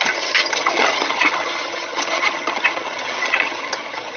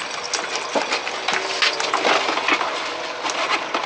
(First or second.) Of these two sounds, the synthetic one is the first